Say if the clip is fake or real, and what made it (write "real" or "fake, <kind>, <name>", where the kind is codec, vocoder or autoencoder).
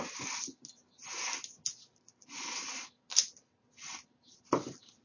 real